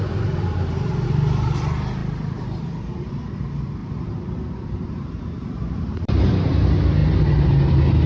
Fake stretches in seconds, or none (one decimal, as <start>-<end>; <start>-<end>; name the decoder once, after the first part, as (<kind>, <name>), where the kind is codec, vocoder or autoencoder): 2.0-3.1 (vocoder, BigVGAN v2); 3.8-6.3